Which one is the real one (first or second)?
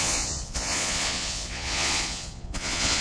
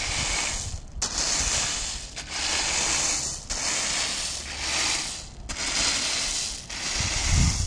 second